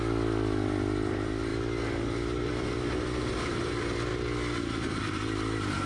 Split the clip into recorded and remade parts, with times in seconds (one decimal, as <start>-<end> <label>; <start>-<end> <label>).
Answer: 0.0-1.5 remade; 1.5-2.5 recorded; 2.5-4.1 remade; 4.1-4.9 recorded; 4.9-5.9 remade